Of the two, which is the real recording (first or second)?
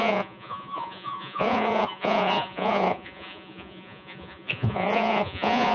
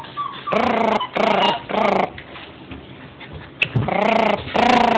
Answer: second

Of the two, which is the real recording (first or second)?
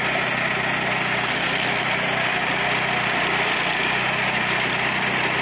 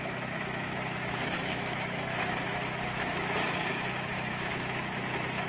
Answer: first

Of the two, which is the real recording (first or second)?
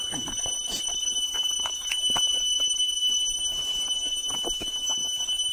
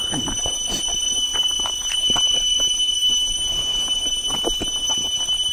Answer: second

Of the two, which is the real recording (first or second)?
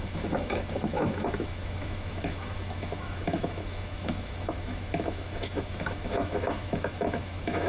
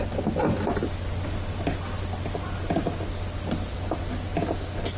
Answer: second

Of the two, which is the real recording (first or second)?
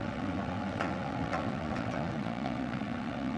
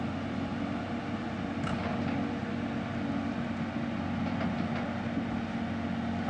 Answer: second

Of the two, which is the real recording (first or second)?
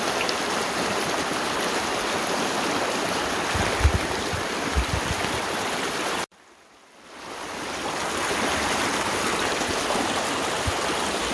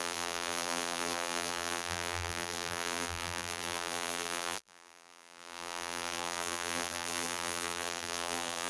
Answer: first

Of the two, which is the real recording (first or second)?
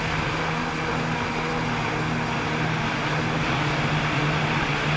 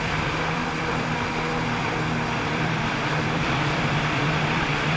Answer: first